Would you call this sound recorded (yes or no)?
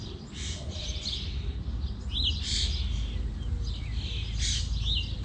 yes